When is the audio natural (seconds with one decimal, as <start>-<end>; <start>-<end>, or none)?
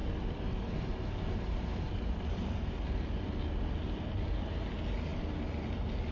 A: 2.3-6.1